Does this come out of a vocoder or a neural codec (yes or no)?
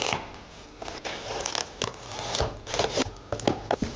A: no